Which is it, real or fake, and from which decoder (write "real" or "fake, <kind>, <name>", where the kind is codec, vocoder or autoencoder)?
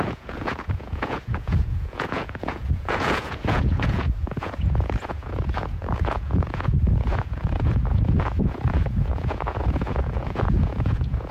fake, vocoder, Vocos